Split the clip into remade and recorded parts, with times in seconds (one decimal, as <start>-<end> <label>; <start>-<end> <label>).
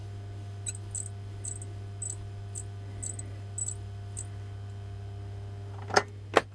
0.0-6.5 recorded